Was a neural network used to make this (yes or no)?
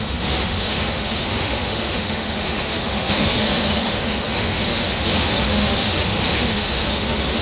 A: yes